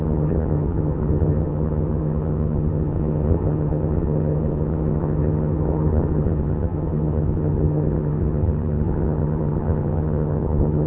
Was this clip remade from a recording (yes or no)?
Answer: yes